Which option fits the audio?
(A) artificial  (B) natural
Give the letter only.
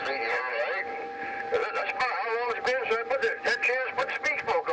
B